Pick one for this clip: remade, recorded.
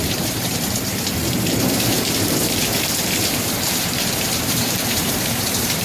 remade